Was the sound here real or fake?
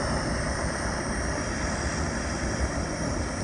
fake